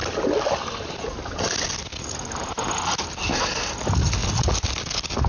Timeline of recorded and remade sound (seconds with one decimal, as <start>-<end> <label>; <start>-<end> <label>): 0.0-5.3 recorded